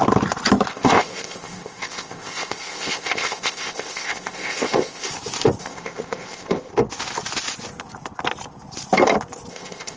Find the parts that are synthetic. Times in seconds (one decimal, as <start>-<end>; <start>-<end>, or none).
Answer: 0.7-5.1; 5.6-6.7; 9.5-10.0